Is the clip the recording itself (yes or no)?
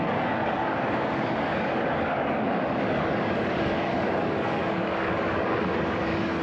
no